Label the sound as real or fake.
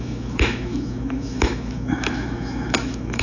fake